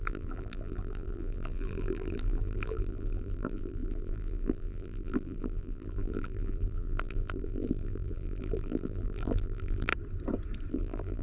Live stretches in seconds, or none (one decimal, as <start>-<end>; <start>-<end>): 9.9-10.7